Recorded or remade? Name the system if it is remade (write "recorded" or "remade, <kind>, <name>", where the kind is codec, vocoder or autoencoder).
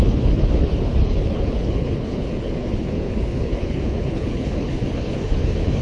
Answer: remade, codec, HILCodec